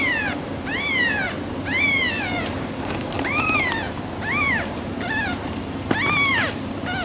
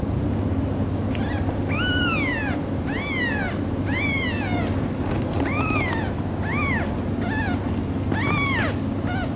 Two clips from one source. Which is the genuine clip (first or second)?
second